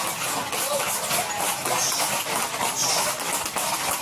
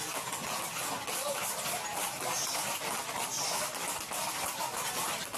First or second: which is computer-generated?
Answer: second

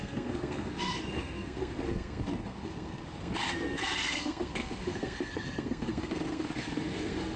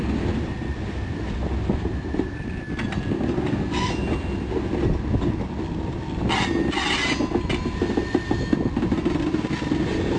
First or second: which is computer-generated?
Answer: first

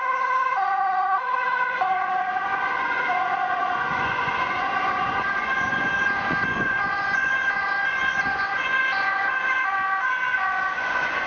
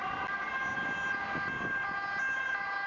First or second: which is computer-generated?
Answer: first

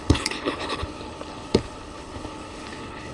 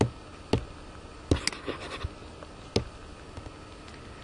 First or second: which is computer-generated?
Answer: first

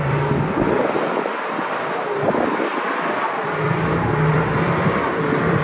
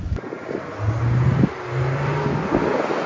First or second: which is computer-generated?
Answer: first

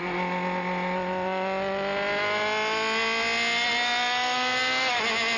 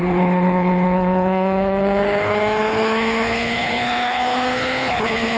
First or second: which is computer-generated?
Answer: second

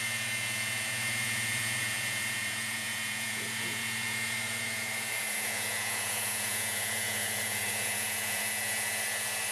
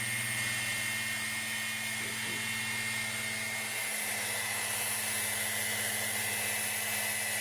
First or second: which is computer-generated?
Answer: first